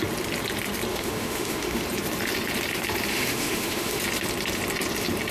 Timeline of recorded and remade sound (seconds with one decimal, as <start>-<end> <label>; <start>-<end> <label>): 0.0-0.9 recorded; 0.9-1.8 remade; 1.8-3.1 recorded; 3.1-4.0 remade; 4.0-5.3 recorded